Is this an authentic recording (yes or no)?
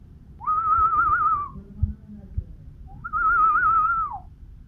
no